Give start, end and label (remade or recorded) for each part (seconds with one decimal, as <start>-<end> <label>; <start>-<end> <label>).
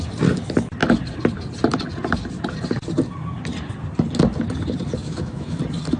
0.0-5.0 recorded; 5.0-5.6 remade; 5.6-6.0 recorded